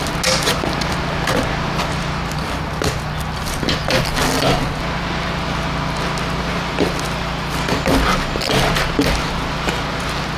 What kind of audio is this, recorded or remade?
recorded